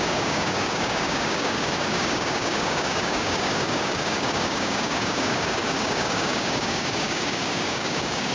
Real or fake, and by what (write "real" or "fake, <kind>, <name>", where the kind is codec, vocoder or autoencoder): fake, codec, DAC